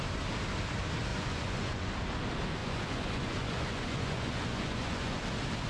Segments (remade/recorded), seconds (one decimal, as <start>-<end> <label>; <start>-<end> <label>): 0.0-1.1 recorded; 1.1-1.9 remade; 1.9-2.6 recorded; 2.6-5.2 remade; 5.2-5.7 recorded